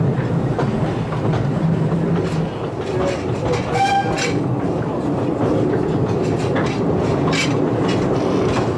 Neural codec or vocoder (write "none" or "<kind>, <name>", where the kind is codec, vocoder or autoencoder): none